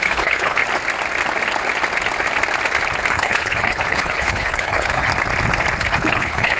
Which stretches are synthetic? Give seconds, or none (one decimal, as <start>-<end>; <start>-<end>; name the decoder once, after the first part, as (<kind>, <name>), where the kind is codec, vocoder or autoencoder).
0.0-0.6 (codec, HILCodec); 3.1-5.1; 5.8-6.6